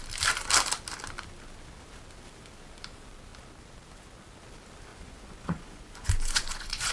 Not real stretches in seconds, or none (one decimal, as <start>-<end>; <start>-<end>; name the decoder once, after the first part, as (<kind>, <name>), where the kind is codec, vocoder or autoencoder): 4.9-6.9 (vocoder, Vocos)